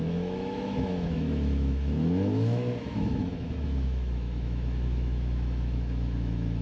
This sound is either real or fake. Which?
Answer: fake